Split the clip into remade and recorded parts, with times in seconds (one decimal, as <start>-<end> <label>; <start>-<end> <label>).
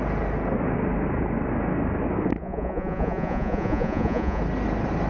0.0-2.4 recorded; 2.4-4.4 remade; 4.4-5.1 recorded